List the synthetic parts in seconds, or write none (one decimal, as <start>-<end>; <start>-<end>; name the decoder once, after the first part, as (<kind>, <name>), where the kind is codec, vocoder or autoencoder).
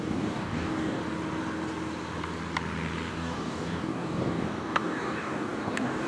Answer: 0.0-1.0 (codec, DAC); 3.1-6.1